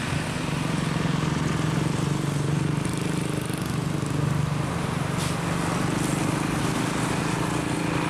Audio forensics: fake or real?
real